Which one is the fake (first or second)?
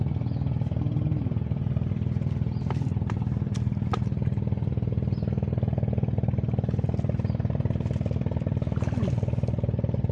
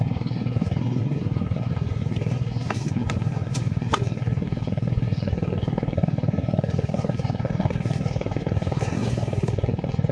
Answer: second